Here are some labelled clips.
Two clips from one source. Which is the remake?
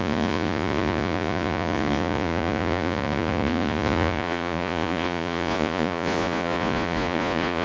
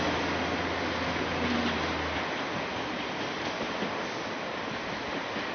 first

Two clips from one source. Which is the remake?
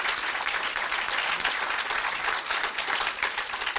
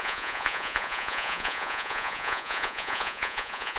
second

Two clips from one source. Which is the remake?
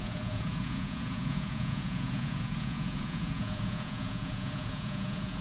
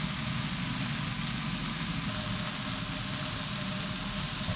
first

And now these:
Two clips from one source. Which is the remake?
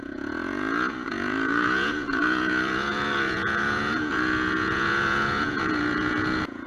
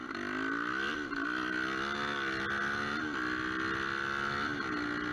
first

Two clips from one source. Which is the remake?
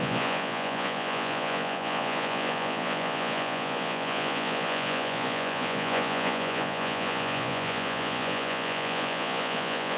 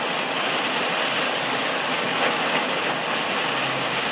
first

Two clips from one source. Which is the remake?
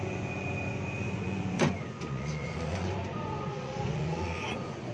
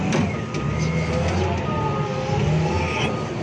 first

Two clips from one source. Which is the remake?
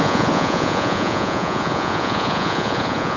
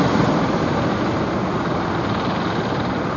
first